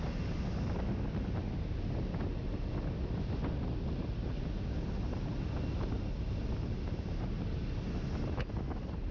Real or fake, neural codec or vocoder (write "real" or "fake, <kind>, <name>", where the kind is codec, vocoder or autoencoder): real